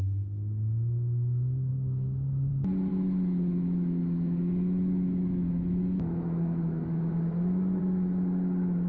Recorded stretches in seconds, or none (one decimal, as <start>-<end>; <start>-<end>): 0.0-1.7; 2.5-2.9; 7.8-8.9